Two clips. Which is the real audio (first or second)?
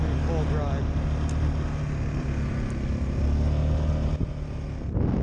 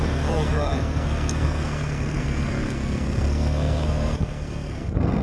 first